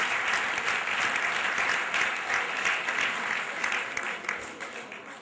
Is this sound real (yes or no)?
yes